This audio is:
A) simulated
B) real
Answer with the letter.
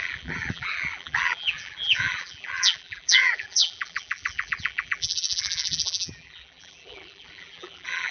A